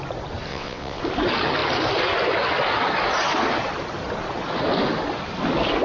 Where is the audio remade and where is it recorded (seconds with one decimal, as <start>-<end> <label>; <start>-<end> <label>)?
0.0-0.5 recorded; 0.5-1.0 remade; 1.0-5.8 recorded